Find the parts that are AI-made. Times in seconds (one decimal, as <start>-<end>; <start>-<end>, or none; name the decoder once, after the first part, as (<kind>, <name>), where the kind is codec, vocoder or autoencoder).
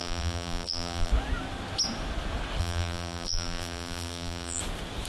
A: 0.0-1.1 (vocoder, BigVGAN v2); 2.6-4.6